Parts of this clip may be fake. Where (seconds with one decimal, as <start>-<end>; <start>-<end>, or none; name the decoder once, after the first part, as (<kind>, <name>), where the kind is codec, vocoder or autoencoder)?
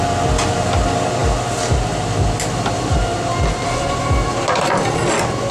none